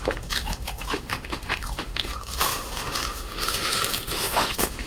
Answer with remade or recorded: remade